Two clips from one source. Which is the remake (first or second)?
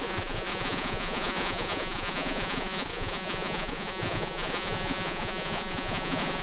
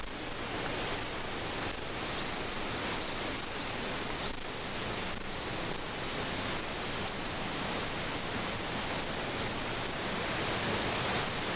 first